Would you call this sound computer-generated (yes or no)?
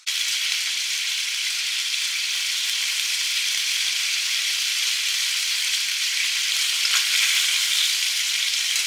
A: yes